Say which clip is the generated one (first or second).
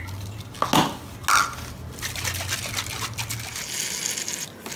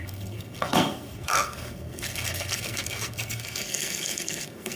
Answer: second